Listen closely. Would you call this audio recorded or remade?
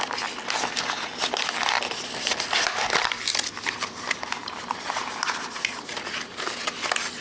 recorded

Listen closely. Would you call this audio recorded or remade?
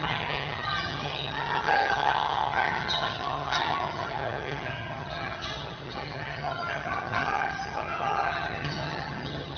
remade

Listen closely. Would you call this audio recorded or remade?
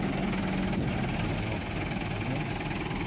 recorded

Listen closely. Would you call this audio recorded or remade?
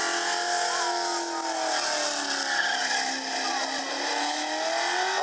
recorded